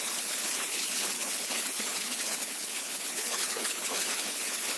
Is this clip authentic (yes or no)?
no